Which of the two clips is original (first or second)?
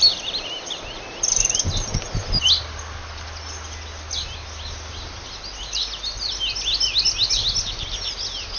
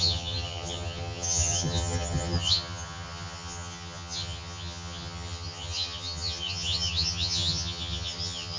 first